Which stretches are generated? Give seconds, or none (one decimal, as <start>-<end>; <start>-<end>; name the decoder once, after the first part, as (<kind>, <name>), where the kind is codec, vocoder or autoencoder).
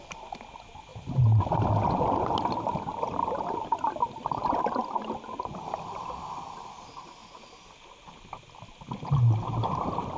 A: none